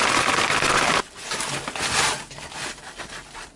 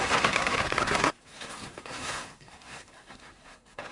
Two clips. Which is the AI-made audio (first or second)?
second